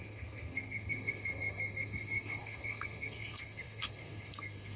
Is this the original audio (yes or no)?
no